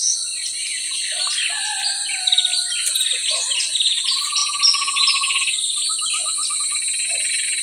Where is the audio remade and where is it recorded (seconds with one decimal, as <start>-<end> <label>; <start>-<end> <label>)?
0.0-7.6 recorded